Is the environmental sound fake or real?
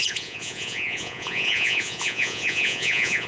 fake